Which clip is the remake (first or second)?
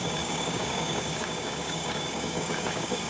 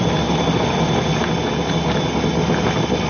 first